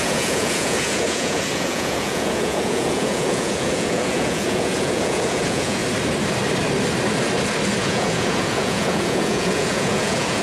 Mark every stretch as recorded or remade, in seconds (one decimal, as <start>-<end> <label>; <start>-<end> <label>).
0.0-5.8 remade; 5.8-7.8 recorded; 7.8-10.4 remade